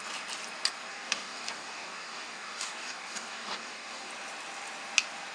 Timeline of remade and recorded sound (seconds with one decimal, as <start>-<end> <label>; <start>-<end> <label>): 0.0-0.9 recorded; 0.9-4.1 remade; 4.1-5.3 recorded